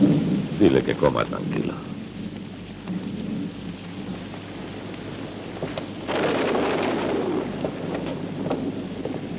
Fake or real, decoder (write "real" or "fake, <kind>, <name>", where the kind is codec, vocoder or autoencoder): real